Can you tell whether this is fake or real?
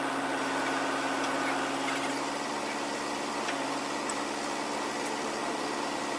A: real